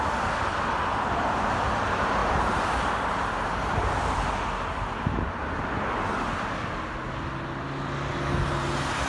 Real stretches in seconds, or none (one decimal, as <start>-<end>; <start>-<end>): 0.0-2.2; 4.3-9.1